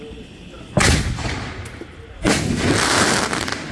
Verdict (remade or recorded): recorded